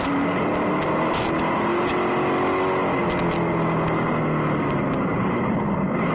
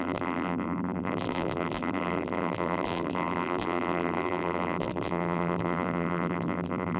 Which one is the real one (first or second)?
first